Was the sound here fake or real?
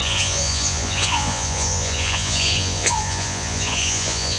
fake